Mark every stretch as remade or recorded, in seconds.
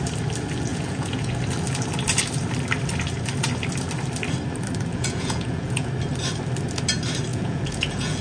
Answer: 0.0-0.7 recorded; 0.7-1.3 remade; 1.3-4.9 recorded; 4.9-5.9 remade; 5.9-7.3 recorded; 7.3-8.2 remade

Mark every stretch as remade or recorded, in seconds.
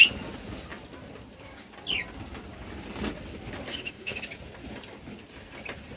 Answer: 0.0-3.7 recorded; 3.7-4.2 remade; 4.2-6.0 recorded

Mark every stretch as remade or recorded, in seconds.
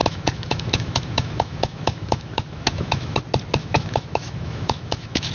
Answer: 0.0-3.2 remade; 3.2-3.6 recorded; 3.6-5.3 remade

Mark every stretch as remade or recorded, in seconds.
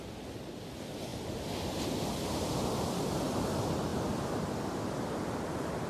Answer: 0.0-1.1 recorded; 1.1-2.5 remade; 2.5-3.9 recorded; 3.9-4.7 remade; 4.7-5.9 recorded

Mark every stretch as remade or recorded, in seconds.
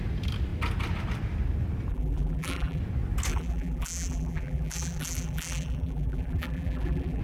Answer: 0.0-1.9 recorded; 1.9-2.8 remade; 2.8-3.3 recorded; 3.3-7.2 remade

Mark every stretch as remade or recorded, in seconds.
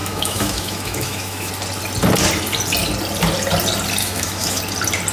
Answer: 0.0-1.5 remade; 1.5-4.0 recorded; 4.0-4.6 remade; 4.6-5.1 recorded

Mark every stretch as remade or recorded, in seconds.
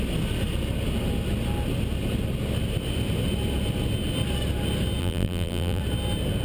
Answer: 0.0-5.0 recorded; 5.0-5.8 remade; 5.8-6.4 recorded